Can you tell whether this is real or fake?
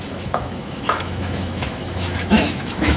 fake